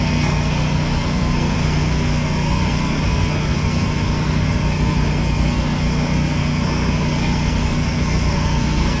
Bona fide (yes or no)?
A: no